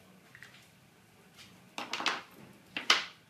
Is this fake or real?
real